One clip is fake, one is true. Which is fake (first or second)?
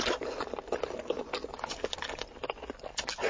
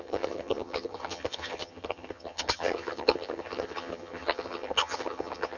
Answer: second